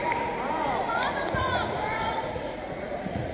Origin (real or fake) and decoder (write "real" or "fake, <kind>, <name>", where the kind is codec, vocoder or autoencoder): fake, vocoder, Vocos